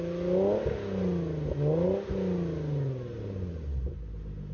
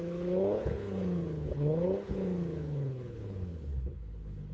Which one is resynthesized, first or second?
second